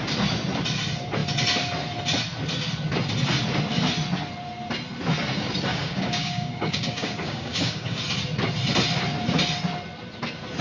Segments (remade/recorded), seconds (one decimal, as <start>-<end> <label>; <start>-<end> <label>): 0.0-5.7 recorded; 5.7-8.0 remade; 8.0-10.6 recorded

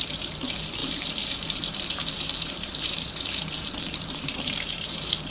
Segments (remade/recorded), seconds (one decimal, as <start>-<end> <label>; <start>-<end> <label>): 0.0-5.3 remade